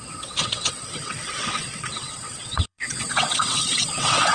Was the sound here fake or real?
fake